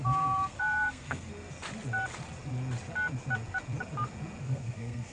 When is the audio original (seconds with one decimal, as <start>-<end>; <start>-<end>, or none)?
1.3-4.4